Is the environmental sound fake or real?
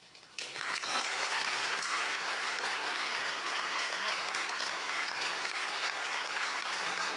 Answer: fake